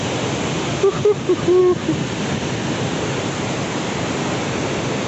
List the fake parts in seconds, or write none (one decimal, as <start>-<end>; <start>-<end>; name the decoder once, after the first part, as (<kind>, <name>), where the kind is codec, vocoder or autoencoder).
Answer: none

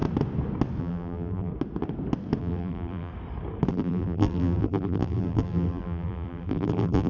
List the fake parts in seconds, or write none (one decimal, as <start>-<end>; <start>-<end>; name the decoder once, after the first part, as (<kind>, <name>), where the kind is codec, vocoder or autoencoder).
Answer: 0.8-1.5 (vocoder, BigVGAN v2); 2.4-3.1; 3.7-7.1

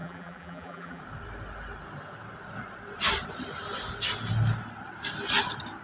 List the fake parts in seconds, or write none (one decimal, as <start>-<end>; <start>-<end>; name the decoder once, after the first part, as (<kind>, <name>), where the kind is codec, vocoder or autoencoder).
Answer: 0.0-1.0 (vocoder, BigVGAN v2)

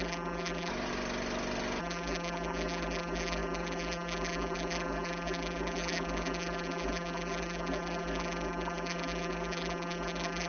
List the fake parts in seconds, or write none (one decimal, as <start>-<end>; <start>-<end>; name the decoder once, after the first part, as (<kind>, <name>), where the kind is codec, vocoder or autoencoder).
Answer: 0.0-0.7 (vocoder, BigVGAN v2); 1.8-10.5

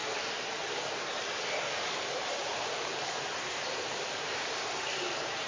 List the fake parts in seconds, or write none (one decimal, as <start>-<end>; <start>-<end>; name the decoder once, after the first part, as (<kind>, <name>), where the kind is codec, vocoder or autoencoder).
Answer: 1.7-5.5 (vocoder, BigVGAN v2)

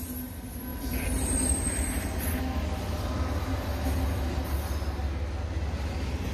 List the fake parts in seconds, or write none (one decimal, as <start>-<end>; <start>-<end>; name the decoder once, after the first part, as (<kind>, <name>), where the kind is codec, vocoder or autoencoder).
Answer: 0.7-2.4 (vocoder, BigVGAN v2)